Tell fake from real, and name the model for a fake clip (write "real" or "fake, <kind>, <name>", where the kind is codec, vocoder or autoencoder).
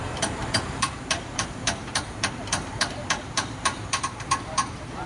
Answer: fake, vocoder, BigVGAN v2